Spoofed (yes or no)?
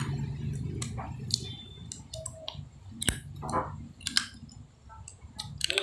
no